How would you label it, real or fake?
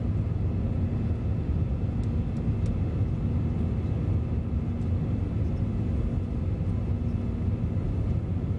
real